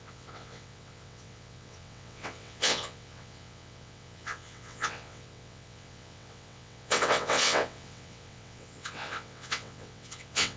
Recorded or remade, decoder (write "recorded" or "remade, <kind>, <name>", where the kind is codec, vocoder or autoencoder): remade, vocoder, WaveNeXt